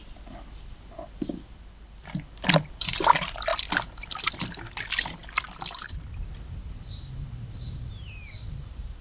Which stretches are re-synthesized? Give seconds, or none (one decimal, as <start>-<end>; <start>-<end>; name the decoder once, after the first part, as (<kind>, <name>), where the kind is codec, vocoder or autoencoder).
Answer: none